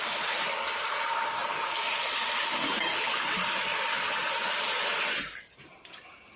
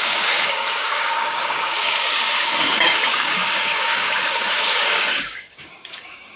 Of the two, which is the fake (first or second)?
second